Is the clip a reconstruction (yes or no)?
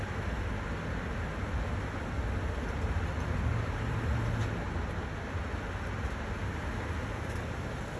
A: no